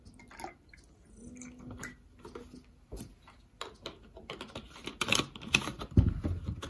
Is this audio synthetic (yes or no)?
no